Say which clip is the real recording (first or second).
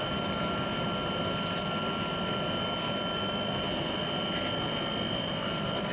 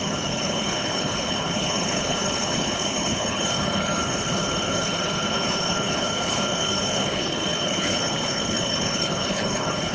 first